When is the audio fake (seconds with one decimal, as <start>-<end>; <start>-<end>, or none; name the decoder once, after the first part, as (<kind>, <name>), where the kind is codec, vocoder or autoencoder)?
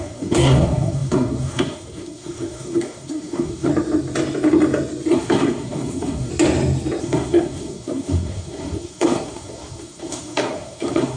0.0-3.7 (codec, SNAC); 5.1-6.3; 7.0-11.2